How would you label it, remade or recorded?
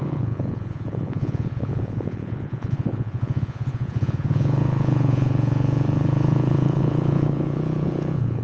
remade